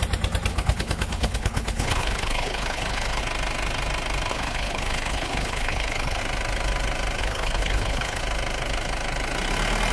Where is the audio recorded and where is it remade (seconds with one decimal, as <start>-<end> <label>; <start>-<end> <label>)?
0.0-0.5 recorded; 0.5-3.2 remade; 3.2-4.3 recorded; 4.3-6.2 remade; 6.2-7.2 recorded; 7.2-8.2 remade; 8.2-9.9 recorded